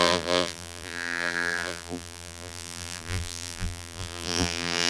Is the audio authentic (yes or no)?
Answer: no